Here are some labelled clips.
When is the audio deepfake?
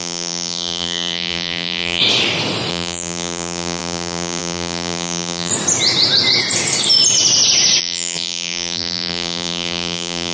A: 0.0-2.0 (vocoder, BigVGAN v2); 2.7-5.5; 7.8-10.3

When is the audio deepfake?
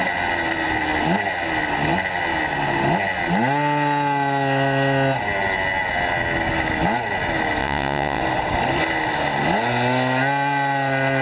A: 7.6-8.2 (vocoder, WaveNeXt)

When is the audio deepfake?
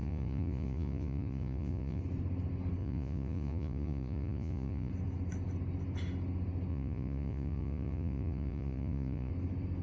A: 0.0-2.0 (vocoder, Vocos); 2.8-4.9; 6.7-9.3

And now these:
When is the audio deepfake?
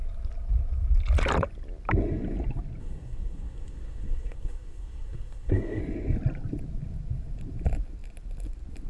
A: 2.8-5.8 (codec, SNAC)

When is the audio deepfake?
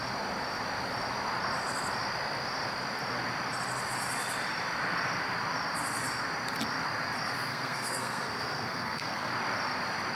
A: 7.5-9.3 (codec, SNAC)